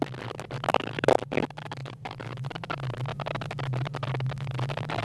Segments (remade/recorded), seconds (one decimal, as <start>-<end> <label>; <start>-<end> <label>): 0.0-1.8 recorded; 1.8-2.5 remade; 2.5-5.0 recorded